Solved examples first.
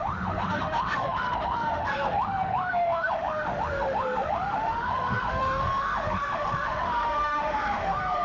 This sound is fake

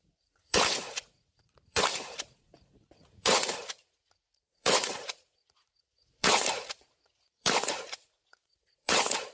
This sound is fake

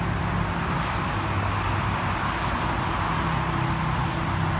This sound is real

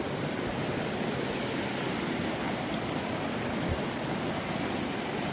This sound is real